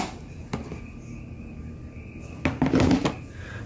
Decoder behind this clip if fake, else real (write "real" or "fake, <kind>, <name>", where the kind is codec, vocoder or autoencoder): real